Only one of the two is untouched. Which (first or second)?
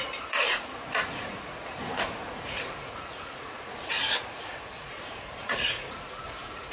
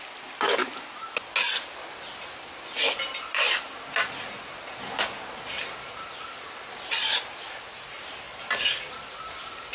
second